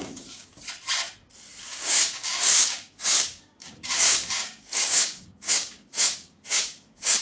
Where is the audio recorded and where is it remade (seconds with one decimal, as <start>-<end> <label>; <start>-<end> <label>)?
0.0-0.5 remade; 0.5-1.6 recorded; 1.6-7.2 remade